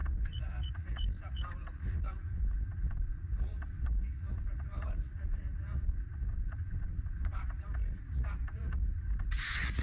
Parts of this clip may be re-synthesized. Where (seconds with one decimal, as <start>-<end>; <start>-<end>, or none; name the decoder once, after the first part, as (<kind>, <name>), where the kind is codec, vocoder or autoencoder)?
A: 0.0-9.8 (vocoder, Vocos)